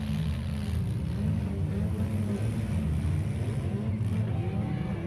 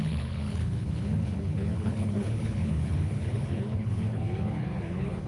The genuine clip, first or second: first